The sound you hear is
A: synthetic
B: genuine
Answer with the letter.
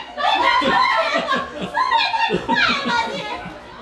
B